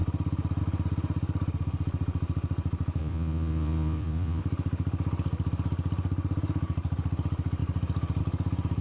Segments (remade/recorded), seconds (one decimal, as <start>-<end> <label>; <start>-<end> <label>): 0.0-3.0 recorded; 3.0-4.4 remade; 4.4-8.8 recorded